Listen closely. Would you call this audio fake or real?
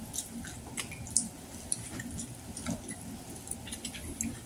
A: real